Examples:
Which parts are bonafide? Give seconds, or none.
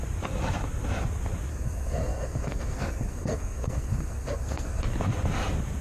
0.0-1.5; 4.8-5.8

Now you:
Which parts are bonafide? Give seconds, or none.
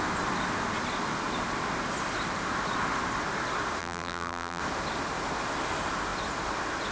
0.0-3.8; 4.6-6.9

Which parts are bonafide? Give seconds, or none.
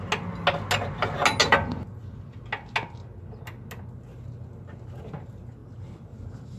0.0-1.4; 2.4-6.6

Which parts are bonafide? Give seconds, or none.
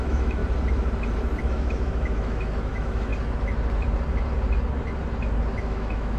0.4-1.4; 3.1-5.6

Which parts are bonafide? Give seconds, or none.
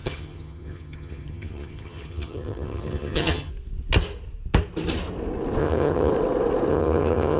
3.5-5.6; 6.1-6.7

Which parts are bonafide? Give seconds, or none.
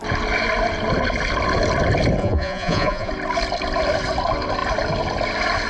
0.0-2.2; 3.1-5.7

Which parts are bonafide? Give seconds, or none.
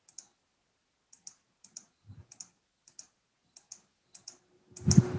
0.0-5.2